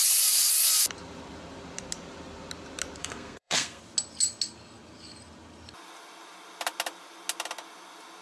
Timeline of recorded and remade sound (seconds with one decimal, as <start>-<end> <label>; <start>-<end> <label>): 0.0-3.0 recorded; 3.0-3.8 remade; 3.8-8.2 recorded